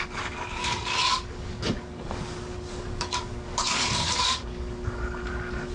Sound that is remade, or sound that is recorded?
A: remade